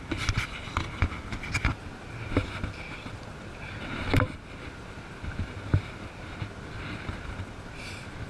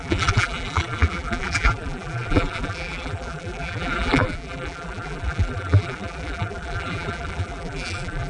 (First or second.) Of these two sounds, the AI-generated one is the second